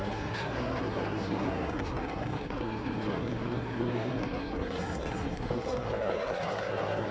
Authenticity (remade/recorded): remade